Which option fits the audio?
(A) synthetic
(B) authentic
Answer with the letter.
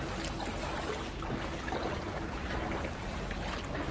B